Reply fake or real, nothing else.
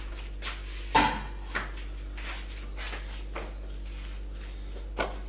real